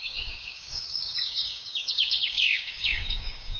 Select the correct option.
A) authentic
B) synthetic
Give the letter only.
B